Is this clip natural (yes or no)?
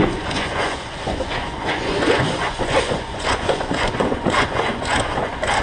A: no